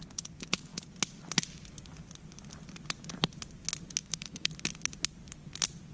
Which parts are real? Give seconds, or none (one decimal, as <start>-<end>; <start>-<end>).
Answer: 0.0-4.0; 4.5-5.9